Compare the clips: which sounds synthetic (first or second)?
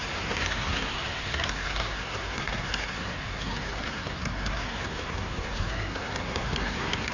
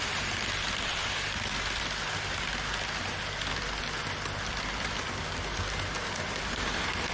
first